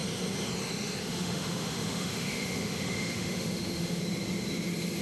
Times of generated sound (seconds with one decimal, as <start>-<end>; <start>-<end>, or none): 1.0-4.0